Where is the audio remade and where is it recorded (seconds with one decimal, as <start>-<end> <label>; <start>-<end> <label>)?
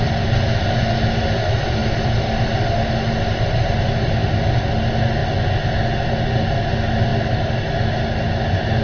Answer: 0.0-8.8 recorded